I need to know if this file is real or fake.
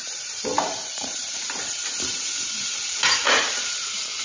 fake